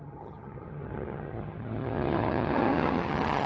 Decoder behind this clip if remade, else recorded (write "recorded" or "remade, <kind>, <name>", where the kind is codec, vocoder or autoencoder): remade, vocoder, HiFi-GAN